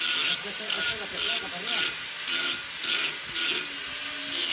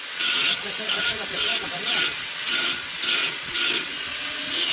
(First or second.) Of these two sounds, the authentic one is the first